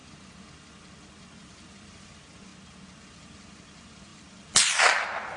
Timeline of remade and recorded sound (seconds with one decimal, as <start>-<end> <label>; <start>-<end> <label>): 0.0-1.4 recorded; 1.4-2.5 remade; 2.5-3.1 recorded; 3.1-5.4 remade